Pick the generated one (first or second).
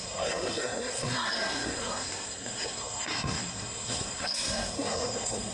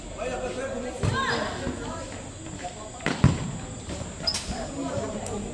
first